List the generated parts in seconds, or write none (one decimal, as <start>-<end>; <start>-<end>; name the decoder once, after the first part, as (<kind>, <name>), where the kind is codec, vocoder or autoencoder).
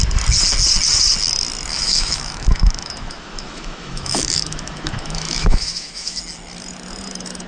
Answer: 1.7-6.2 (autoencoder, DAC-VAE)